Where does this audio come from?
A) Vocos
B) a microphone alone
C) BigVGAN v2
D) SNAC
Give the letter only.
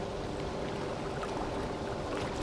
B